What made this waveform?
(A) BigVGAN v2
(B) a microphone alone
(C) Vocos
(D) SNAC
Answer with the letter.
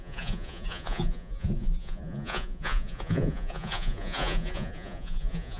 C